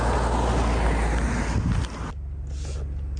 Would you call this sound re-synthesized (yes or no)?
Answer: no